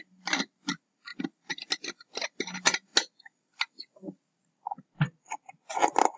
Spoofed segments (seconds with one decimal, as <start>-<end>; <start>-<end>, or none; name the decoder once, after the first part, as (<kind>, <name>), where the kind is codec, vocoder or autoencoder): none